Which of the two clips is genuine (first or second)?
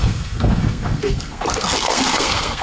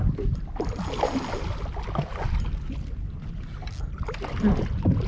second